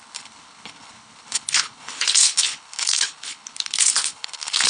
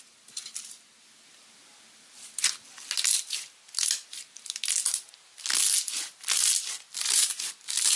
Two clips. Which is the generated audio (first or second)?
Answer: first